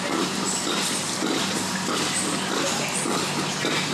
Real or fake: real